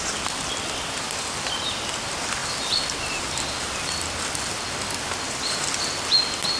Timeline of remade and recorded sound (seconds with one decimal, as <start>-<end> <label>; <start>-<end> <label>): 0.0-6.6 recorded